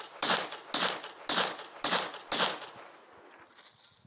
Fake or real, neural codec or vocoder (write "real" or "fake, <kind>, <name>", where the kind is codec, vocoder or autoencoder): real